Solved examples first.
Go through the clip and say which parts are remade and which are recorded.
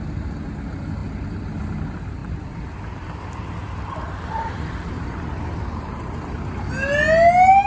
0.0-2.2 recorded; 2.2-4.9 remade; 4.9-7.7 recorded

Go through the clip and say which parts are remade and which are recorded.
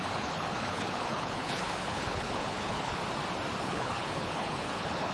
0.0-3.0 remade; 3.0-3.6 recorded; 3.6-5.1 remade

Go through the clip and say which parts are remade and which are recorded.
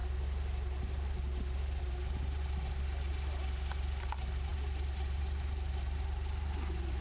0.0-7.0 recorded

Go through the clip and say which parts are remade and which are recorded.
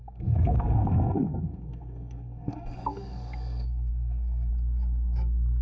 0.0-4.5 remade; 4.5-5.6 recorded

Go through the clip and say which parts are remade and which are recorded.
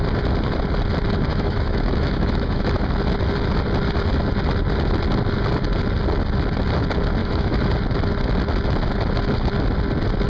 0.0-1.3 recorded; 1.3-2.8 remade; 2.8-7.2 recorded; 7.2-7.7 remade; 7.7-10.3 recorded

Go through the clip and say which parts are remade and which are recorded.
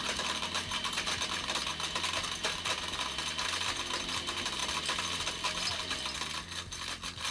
0.0-7.3 recorded